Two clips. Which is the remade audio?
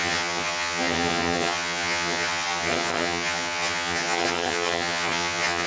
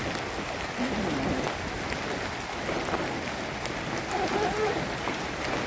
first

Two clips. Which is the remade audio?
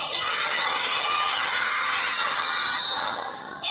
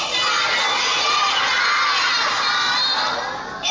first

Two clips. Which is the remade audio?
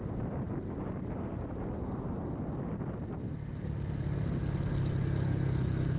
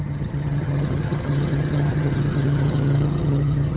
second